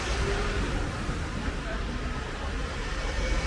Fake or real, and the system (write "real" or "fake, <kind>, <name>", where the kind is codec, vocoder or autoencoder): real